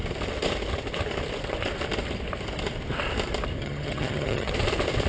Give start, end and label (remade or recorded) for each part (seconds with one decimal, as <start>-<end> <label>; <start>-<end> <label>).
0.0-3.6 recorded; 3.6-4.5 remade; 4.5-5.1 recorded